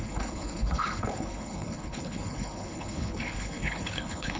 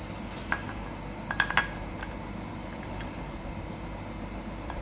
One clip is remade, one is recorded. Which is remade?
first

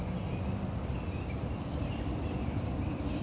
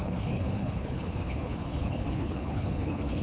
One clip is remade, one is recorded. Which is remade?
second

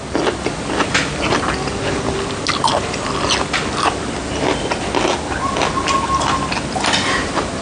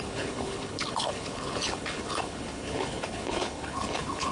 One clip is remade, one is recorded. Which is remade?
second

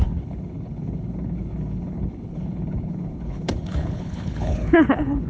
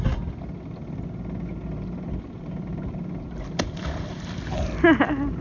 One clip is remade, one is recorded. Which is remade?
first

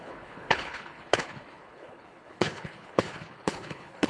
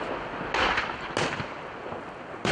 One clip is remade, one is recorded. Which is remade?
first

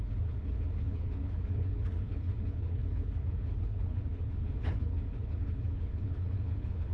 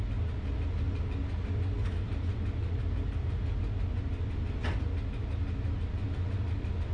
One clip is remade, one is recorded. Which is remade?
first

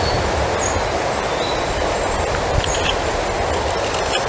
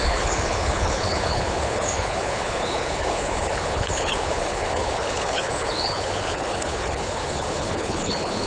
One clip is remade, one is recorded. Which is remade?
second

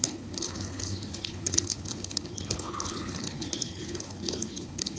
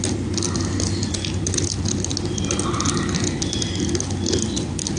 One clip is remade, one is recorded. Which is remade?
first